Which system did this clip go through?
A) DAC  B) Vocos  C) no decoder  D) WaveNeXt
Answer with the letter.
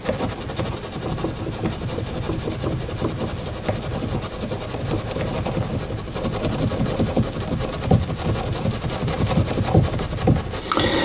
C